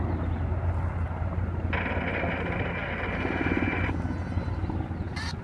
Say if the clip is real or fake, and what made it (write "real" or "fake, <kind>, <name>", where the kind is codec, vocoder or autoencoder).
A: real